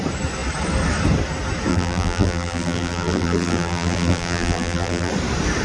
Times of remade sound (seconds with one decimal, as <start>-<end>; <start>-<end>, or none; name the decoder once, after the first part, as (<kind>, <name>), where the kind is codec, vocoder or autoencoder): 1.7-5.1 (vocoder, BigVGAN v2)